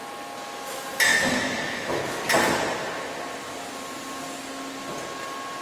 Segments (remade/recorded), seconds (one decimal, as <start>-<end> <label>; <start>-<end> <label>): 0.0-1.1 recorded; 1.1-2.0 remade; 2.0-5.6 recorded

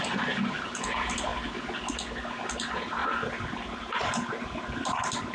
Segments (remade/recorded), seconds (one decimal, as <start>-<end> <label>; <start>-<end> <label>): 0.0-1.3 remade; 1.3-2.4 recorded; 2.4-3.0 remade; 3.0-3.8 recorded; 3.8-5.3 remade

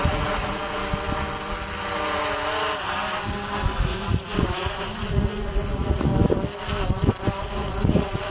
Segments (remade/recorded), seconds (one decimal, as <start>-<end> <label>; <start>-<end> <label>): 0.0-0.8 remade; 0.8-3.7 recorded; 3.7-6.1 remade; 6.1-7.4 recorded; 7.4-8.3 remade

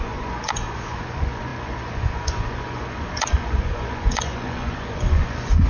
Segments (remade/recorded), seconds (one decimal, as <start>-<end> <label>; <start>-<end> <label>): 0.0-5.7 remade

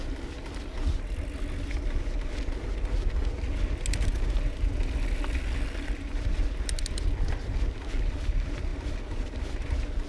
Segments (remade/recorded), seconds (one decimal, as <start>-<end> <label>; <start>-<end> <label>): 0.0-10.1 recorded